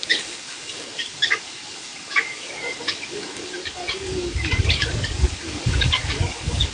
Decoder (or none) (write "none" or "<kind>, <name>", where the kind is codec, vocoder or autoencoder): codec, DAC